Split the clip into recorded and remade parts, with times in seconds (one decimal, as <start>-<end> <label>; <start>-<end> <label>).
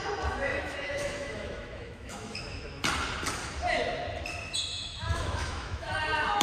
0.0-0.5 recorded; 0.5-2.8 remade; 2.8-4.7 recorded; 4.7-5.9 remade; 5.9-6.4 recorded